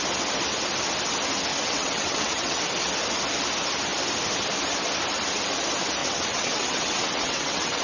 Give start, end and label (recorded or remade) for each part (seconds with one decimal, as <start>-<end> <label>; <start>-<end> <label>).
0.0-1.5 recorded; 1.5-2.6 remade; 2.6-6.0 recorded; 6.0-7.8 remade